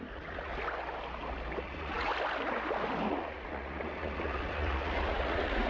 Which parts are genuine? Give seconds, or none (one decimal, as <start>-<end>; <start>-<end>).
0.5-1.6; 2.1-3.1